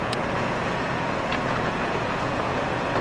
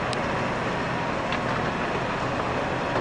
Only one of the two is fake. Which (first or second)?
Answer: first